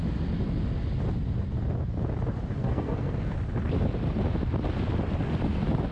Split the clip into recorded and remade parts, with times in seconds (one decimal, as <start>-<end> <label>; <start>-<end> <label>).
0.0-2.6 recorded; 2.6-3.3 remade; 3.3-5.9 recorded